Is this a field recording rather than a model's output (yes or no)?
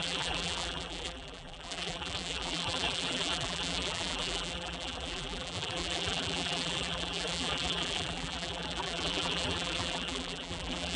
no